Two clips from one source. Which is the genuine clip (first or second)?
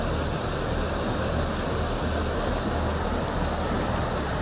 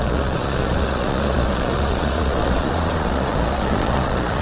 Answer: first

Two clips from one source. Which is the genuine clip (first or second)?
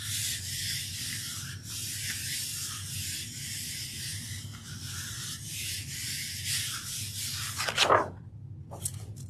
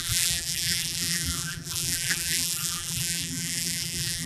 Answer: first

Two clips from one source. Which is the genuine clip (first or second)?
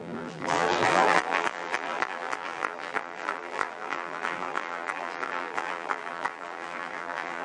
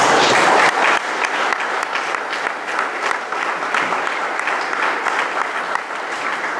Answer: second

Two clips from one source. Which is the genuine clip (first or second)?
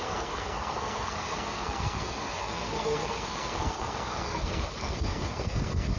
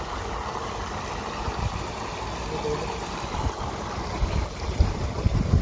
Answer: second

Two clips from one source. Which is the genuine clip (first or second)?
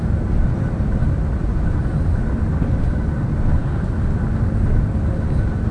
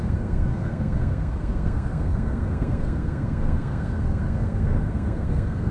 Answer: first